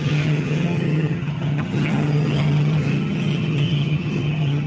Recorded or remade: remade